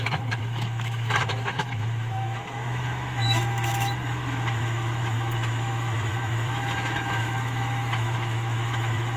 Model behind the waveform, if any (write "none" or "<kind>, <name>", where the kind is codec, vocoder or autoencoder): autoencoder, DAC-VAE